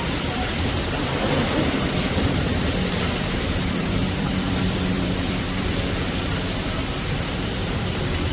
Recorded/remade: remade